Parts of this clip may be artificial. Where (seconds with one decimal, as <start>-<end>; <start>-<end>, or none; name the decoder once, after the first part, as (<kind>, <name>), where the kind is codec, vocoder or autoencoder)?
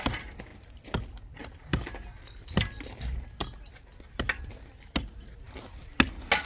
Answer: none